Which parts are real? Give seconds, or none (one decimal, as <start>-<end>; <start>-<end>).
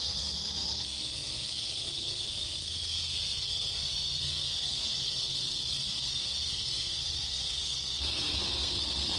none